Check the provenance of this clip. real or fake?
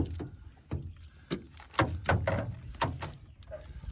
real